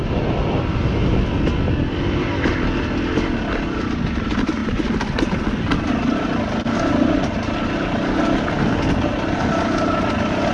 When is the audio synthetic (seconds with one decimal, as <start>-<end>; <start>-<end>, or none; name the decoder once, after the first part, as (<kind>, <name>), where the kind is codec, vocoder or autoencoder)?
none